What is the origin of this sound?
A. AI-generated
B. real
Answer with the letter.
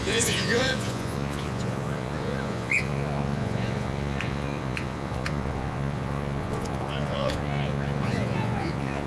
A